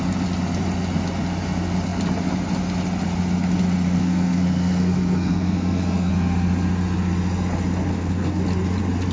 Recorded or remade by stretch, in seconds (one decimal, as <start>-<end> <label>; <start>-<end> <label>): 0.0-4.0 recorded; 4.0-6.1 remade; 6.1-7.9 recorded; 7.9-8.4 remade; 8.4-9.1 recorded